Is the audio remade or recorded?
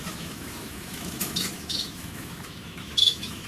remade